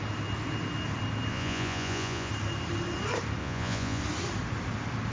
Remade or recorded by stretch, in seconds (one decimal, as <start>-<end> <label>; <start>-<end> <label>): 0.0-1.3 recorded; 1.3-2.3 remade; 2.3-3.4 recorded; 3.4-4.0 remade; 4.0-5.1 recorded

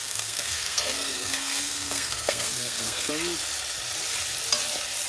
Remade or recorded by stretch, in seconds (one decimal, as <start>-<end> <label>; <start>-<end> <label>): 0.0-3.1 remade; 3.1-5.1 recorded

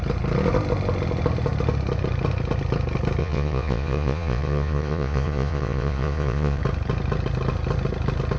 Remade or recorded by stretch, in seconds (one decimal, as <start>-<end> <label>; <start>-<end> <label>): 0.0-3.2 recorded; 3.2-6.6 remade; 6.6-8.4 recorded

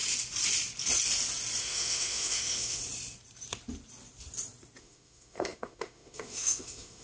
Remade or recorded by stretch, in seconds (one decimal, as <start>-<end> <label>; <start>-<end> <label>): 0.0-1.6 recorded; 1.6-2.8 remade; 2.8-4.8 recorded; 4.8-7.0 remade

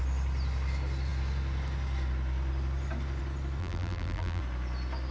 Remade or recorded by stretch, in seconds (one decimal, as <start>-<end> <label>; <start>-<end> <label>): 0.0-3.6 recorded; 3.6-4.4 remade; 4.4-5.1 recorded

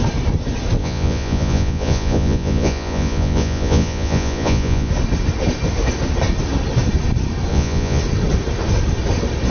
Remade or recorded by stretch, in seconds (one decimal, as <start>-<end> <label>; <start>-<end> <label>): 0.0-0.8 recorded; 0.8-4.9 remade; 4.9-7.5 recorded; 7.5-8.0 remade; 8.0-9.5 recorded